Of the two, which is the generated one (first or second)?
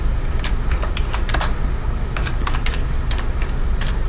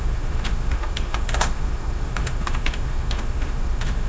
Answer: second